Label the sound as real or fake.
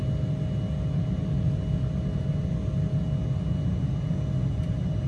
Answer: real